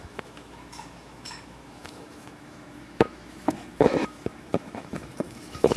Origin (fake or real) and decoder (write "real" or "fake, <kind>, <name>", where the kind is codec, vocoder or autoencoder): fake, autoencoder, DAC-VAE